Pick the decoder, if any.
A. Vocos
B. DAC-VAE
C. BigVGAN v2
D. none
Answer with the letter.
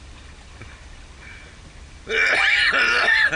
D